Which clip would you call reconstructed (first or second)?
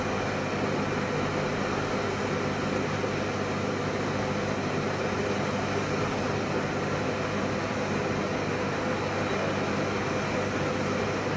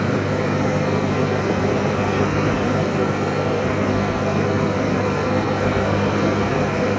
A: second